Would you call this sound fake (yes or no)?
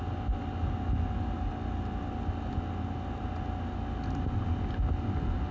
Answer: no